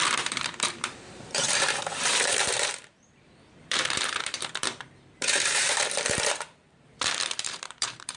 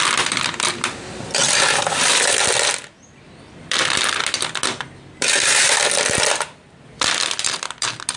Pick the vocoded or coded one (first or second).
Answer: first